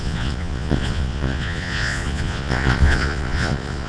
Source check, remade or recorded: remade